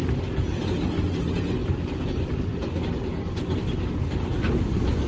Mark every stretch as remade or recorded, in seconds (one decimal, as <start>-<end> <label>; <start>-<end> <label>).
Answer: 0.0-5.1 recorded